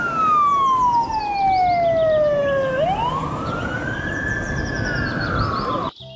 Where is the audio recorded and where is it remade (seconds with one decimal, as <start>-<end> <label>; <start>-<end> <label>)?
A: 0.0-6.2 recorded